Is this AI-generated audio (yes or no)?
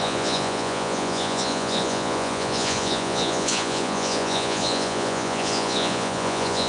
yes